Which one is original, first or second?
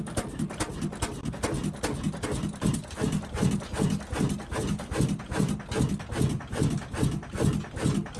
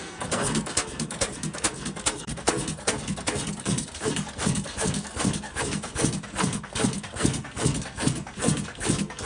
first